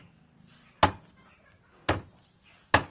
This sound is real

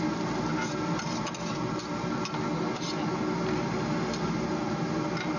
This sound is real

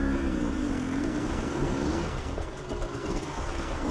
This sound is fake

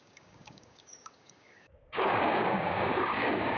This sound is fake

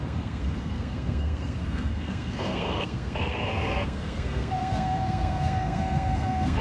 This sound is fake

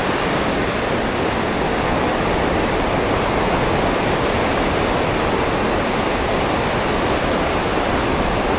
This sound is real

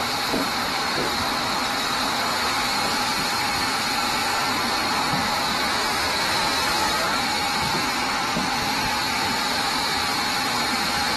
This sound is real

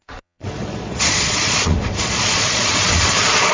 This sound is fake